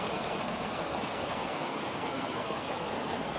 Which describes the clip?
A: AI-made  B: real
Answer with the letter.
A